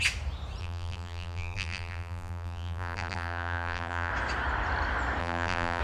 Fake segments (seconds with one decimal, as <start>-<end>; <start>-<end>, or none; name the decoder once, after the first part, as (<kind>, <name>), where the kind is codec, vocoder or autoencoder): 0.6-4.1 (vocoder, BigVGAN v2); 5.2-5.8